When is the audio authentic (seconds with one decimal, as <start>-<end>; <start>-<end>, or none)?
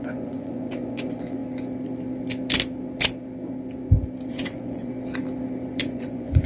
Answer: 1.4-4.3; 4.9-5.8